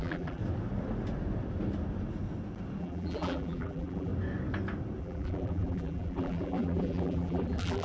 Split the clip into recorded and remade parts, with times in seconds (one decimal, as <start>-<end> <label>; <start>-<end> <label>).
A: 0.0-0.4 remade; 0.4-2.8 recorded; 2.8-4.1 remade; 4.1-5.0 recorded; 5.0-7.8 remade